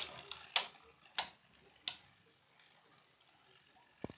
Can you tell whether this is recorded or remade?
recorded